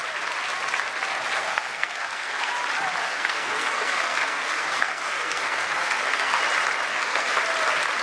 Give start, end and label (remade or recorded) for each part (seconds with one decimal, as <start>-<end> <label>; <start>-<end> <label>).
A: 0.0-1.4 recorded; 1.4-2.5 remade; 2.5-3.0 recorded; 3.0-6.4 remade; 6.4-6.9 recorded; 6.9-7.4 remade; 7.4-8.0 recorded